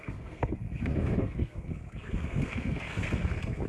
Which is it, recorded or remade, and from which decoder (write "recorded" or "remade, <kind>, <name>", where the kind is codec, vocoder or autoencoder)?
remade, codec, SNAC